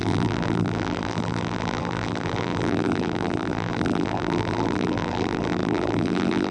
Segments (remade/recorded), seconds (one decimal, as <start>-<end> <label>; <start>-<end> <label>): 0.0-6.5 remade